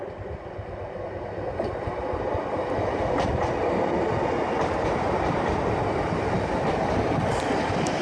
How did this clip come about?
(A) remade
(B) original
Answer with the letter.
B